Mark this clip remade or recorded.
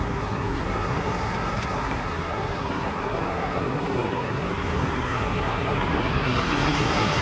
remade